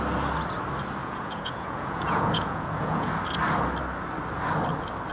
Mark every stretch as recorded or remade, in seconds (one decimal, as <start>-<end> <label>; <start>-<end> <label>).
0.0-1.0 recorded; 1.0-3.1 remade; 3.1-5.1 recorded